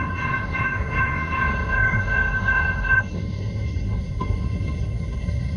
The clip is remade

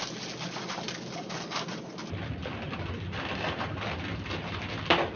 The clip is recorded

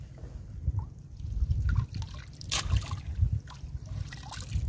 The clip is recorded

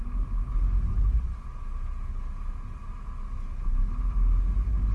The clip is recorded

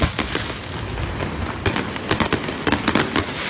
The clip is recorded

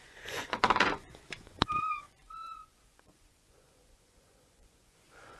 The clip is remade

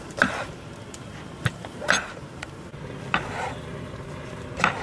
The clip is recorded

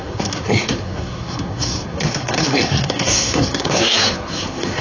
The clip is remade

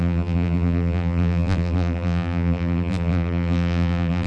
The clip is remade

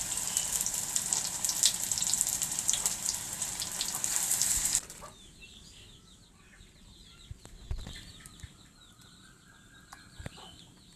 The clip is remade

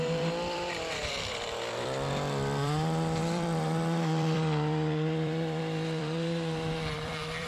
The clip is remade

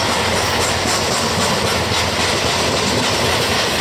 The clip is recorded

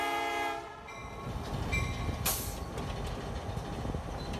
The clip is recorded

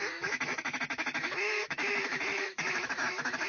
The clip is remade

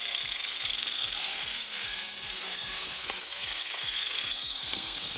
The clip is remade